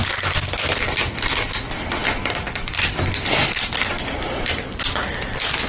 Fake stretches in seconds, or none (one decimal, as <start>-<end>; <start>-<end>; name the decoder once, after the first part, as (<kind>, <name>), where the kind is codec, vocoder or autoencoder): 0.0-0.7 (vocoder, BigVGAN v2)